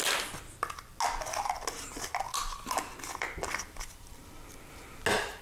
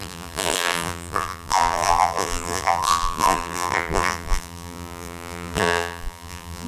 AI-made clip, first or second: second